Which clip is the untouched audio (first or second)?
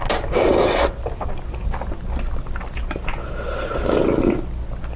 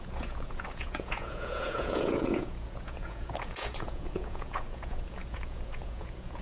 first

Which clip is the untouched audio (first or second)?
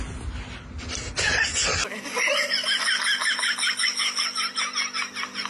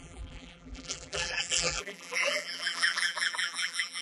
first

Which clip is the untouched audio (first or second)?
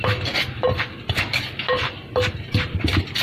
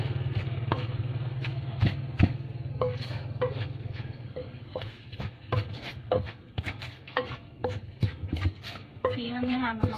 first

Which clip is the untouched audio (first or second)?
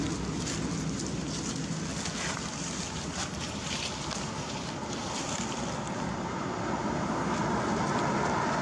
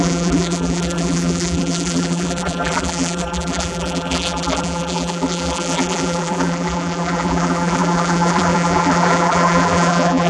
first